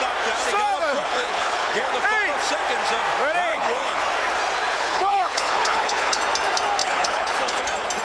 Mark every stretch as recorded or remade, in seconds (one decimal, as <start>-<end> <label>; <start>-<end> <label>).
0.0-0.9 recorded; 0.9-1.9 remade; 1.9-3.5 recorded; 3.5-4.0 remade; 4.0-4.7 recorded; 4.7-6.2 remade; 6.2-6.8 recorded; 6.8-7.6 remade; 7.6-8.0 recorded